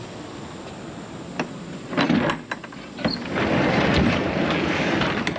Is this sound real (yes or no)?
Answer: yes